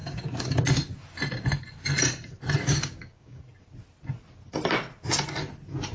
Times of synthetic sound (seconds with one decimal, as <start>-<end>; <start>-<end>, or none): 0.0-0.6; 2.6-3.4